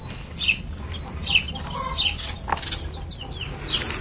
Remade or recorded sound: recorded